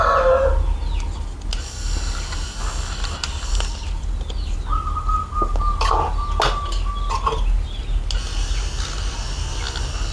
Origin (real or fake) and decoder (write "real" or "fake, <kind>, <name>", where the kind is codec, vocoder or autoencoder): real